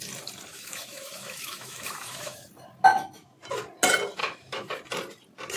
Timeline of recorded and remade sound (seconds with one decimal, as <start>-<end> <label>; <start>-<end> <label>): 0.0-0.5 recorded; 0.5-2.5 remade; 2.5-2.9 recorded; 2.9-3.4 remade; 3.4-4.2 recorded; 4.2-4.7 remade; 4.7-5.6 recorded